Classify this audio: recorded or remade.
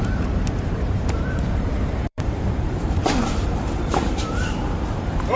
remade